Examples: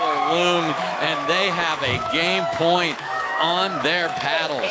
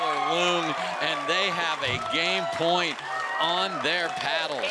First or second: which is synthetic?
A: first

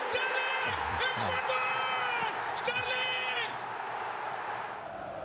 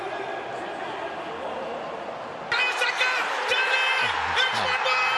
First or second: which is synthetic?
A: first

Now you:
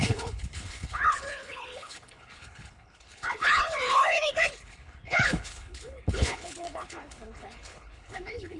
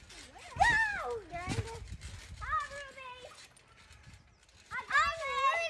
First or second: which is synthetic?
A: first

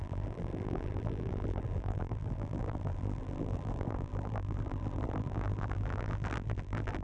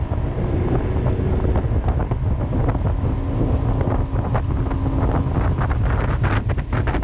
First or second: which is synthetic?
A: first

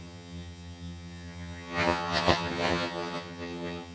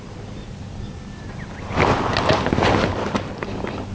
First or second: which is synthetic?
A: first